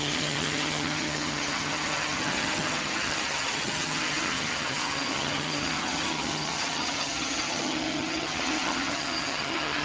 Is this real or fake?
fake